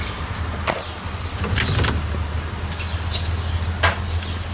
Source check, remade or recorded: recorded